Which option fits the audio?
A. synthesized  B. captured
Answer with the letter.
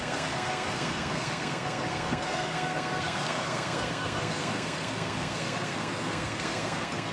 A